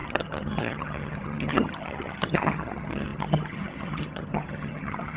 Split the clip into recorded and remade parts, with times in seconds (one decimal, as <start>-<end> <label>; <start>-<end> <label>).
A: 0.0-5.2 remade